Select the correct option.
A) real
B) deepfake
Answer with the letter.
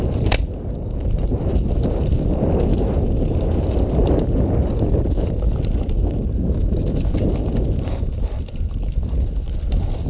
A